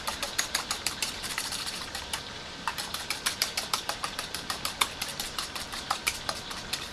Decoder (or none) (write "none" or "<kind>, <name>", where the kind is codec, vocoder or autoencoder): vocoder, BigVGAN v2